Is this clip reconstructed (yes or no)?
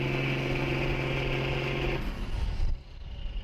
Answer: no